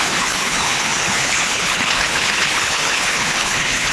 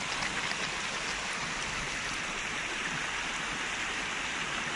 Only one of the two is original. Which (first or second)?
second